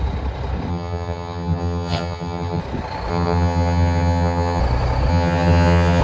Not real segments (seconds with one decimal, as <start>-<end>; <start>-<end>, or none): 0.7-2.6; 3.1-4.6; 5.1-6.0